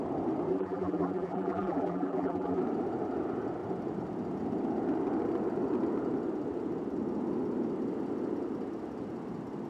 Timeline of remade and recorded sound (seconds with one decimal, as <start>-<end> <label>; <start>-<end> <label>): 0.0-0.5 recorded; 0.5-2.6 remade; 2.6-9.7 recorded